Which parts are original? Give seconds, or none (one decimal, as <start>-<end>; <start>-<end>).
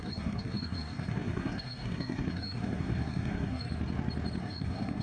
3.7-4.4